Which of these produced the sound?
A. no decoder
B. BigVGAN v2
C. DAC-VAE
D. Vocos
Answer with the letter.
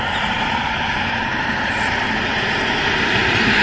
B